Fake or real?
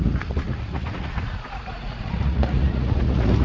fake